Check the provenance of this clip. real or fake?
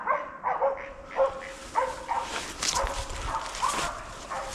real